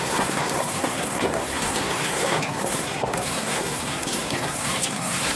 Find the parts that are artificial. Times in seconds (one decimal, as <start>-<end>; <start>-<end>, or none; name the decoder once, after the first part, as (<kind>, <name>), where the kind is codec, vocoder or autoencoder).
0.0-5.4 (codec, SNAC)